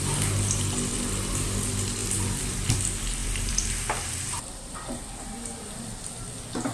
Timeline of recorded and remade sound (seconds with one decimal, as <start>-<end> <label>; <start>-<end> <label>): 0.0-3.2 recorded; 3.2-5.1 remade; 5.1-6.7 recorded